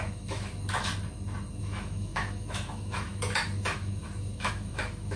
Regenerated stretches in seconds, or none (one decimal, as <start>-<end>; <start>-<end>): 0.0-0.9; 1.6-5.2